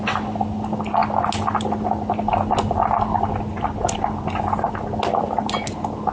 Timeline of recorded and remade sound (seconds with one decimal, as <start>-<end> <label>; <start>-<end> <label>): 0.0-6.1 recorded

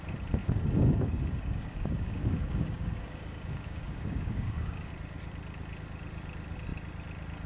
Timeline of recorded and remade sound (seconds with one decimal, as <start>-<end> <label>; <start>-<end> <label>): 0.0-0.4 recorded; 0.4-4.9 remade; 4.9-7.5 recorded

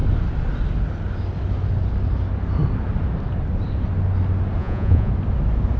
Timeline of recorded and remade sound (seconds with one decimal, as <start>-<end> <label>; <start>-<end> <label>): 0.0-4.6 recorded; 4.6-5.1 remade; 5.1-5.8 recorded

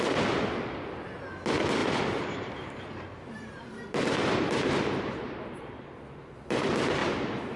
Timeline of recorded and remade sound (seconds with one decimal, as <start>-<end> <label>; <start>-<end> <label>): 0.0-1.8 recorded; 1.8-5.8 remade; 5.8-7.0 recorded; 7.0-7.6 remade

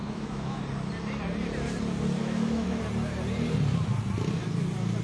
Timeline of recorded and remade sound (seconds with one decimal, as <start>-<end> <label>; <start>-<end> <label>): 0.0-0.6 remade; 0.6-2.2 recorded; 2.2-2.8 remade; 2.8-5.0 recorded